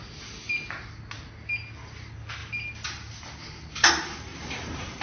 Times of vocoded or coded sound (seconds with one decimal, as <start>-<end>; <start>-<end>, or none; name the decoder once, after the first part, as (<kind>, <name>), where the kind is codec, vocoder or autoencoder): none